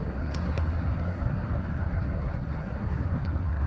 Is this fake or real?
fake